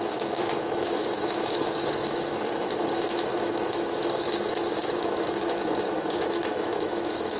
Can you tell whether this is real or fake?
fake